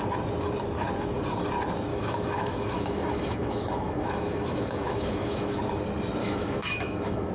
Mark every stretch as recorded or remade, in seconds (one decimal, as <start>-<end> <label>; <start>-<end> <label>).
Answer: 0.0-1.9 recorded; 1.9-5.6 remade; 5.6-6.2 recorded; 6.2-7.3 remade